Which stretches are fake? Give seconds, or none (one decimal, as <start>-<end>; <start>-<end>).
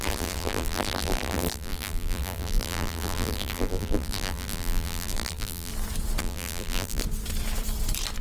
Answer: 0.0-5.7; 6.2-7.0